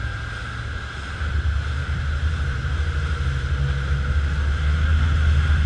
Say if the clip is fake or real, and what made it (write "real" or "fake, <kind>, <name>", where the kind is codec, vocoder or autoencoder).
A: real